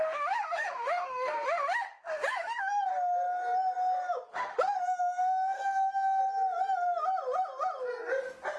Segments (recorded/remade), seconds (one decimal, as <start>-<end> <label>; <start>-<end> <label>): 0.0-2.9 remade; 2.9-4.3 recorded; 4.3-6.2 remade; 6.2-8.6 recorded